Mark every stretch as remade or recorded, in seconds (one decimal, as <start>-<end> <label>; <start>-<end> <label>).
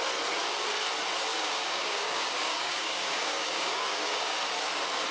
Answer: 0.0-1.3 recorded; 1.3-4.4 remade; 4.4-5.1 recorded